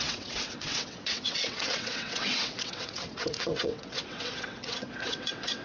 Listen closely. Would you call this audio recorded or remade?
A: remade